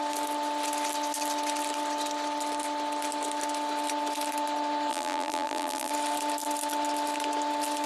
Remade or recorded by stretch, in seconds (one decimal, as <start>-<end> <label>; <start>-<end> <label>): 0.0-4.9 recorded; 4.9-5.9 remade; 5.9-7.9 recorded